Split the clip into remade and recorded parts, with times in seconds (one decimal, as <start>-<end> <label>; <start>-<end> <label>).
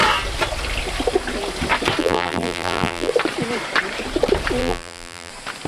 0.0-2.0 recorded; 2.0-3.1 remade; 3.1-4.6 recorded; 4.6-5.3 remade; 5.3-5.7 recorded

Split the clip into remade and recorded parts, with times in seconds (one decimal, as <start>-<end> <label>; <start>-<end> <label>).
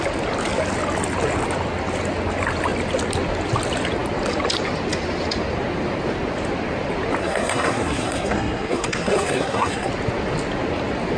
0.0-7.2 recorded; 7.2-9.9 remade; 9.9-11.2 recorded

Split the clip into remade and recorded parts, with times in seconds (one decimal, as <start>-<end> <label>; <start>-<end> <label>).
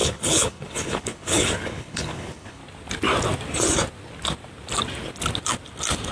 0.0-2.6 remade; 2.6-6.1 recorded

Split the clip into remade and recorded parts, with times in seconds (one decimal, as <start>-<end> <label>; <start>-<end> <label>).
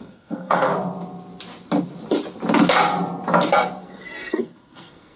0.0-0.7 remade; 0.7-3.8 recorded; 3.8-5.2 remade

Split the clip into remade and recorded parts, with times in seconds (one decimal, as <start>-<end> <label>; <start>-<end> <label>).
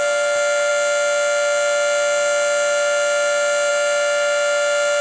0.0-5.0 recorded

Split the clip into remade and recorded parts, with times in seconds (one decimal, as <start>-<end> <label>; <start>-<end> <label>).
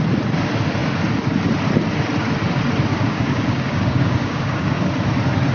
0.0-2.9 recorded; 2.9-4.8 remade; 4.8-5.5 recorded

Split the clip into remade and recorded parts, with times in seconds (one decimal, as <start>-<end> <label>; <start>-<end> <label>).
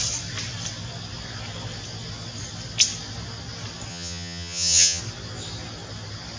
0.0-3.9 recorded; 3.9-5.0 remade; 5.0-6.4 recorded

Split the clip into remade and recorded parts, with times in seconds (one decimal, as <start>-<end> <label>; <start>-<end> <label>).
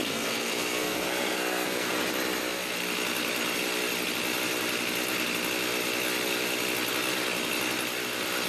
0.0-2.0 remade; 2.0-8.5 recorded